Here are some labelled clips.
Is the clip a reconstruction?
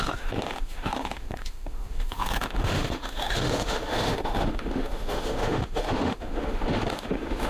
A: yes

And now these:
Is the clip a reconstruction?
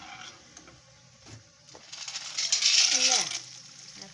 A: no